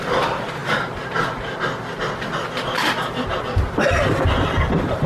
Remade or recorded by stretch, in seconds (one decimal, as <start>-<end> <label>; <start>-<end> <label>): 0.0-5.1 recorded